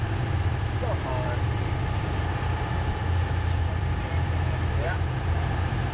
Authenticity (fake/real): fake